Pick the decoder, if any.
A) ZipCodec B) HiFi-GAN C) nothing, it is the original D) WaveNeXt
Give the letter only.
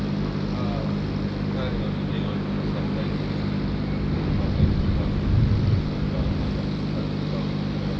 C